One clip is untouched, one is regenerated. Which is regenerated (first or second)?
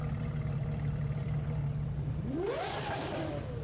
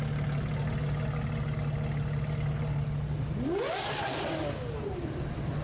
first